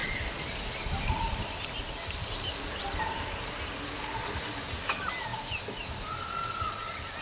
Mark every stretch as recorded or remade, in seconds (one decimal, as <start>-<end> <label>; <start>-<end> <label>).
0.0-7.2 recorded